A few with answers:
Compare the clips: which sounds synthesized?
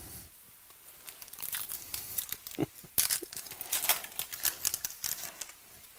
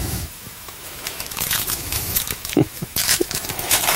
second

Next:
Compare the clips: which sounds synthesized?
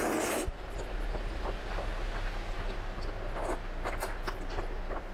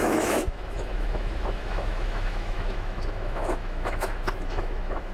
second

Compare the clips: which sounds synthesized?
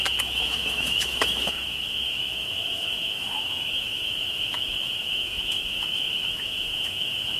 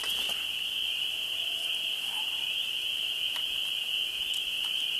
first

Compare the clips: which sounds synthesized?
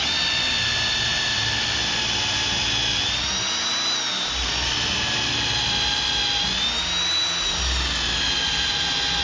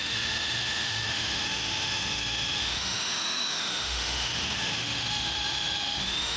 second